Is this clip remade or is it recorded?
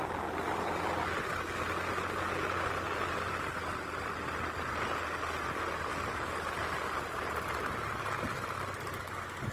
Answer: recorded